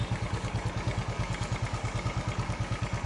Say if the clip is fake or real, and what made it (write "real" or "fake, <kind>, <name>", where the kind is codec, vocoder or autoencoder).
fake, codec, DAC